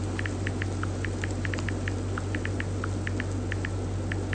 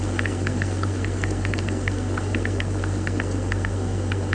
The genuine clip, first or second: first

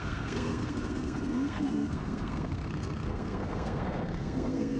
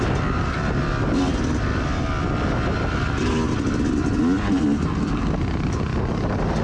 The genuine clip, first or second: second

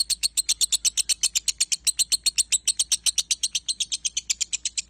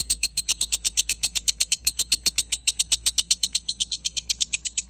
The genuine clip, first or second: first